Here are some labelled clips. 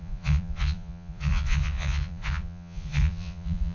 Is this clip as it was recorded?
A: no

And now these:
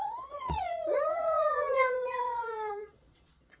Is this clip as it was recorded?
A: no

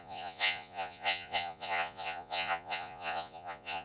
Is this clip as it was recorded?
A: no